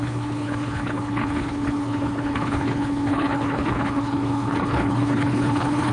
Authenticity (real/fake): fake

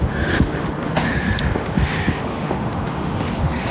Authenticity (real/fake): fake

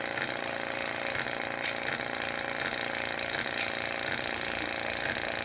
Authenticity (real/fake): real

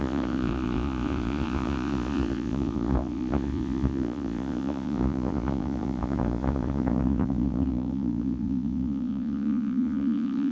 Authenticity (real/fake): fake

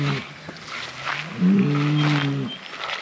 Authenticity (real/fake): real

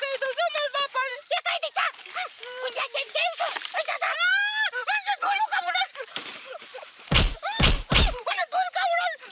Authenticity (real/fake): fake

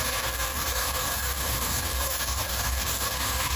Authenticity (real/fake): fake